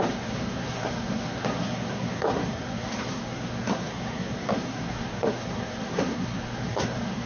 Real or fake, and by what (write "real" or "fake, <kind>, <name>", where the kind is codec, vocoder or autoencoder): fake, codec, SNAC